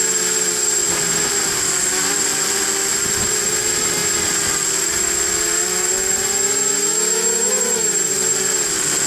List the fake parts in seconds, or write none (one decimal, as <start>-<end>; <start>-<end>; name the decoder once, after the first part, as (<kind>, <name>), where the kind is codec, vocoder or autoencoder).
none